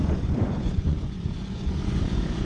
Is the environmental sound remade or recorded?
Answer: remade